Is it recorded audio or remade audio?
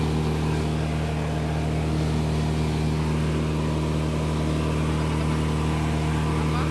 recorded